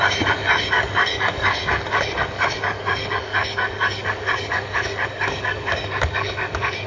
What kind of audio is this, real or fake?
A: fake